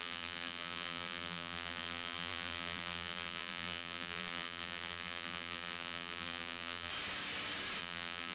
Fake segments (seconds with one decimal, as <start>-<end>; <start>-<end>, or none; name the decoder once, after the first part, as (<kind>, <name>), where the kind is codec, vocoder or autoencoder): 0.0-6.9 (vocoder, BigVGAN v2); 7.8-8.3